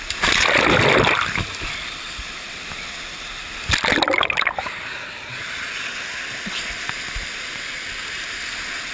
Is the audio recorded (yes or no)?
yes